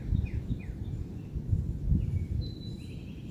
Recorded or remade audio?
recorded